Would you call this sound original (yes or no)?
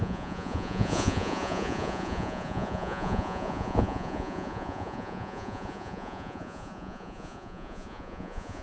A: no